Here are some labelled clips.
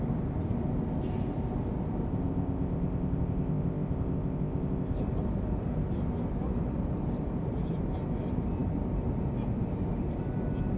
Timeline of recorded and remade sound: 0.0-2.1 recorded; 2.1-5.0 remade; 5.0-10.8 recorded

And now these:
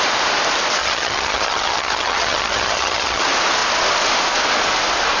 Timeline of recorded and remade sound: 0.0-0.8 recorded; 0.8-3.2 remade; 3.2-5.2 recorded

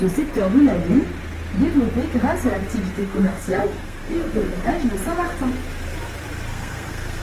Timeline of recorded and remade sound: 0.0-3.0 recorded; 3.0-4.7 remade; 4.7-6.5 recorded; 6.5-7.2 remade

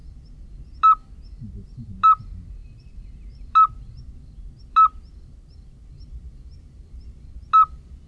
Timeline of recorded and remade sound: 0.0-8.1 recorded